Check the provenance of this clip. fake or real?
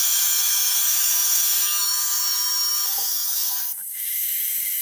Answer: fake